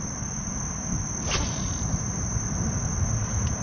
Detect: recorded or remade recorded